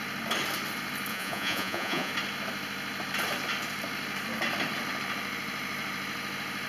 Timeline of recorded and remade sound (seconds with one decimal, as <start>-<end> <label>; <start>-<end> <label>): 0.0-1.1 recorded; 1.1-2.1 remade; 2.1-6.7 recorded